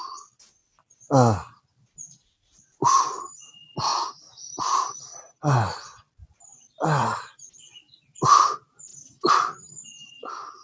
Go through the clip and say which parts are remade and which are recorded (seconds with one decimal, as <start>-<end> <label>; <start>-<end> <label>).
0.0-8.9 recorded; 8.9-10.1 remade; 10.1-10.6 recorded